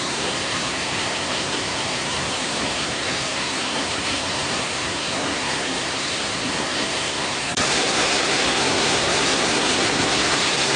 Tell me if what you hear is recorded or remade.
remade